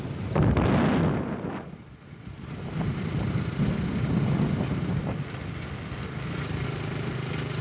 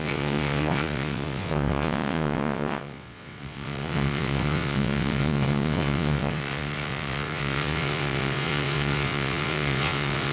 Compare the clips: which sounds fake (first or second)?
second